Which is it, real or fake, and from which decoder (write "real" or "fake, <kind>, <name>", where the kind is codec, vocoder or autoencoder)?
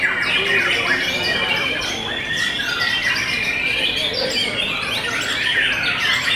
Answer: real